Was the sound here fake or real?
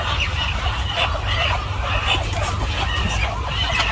real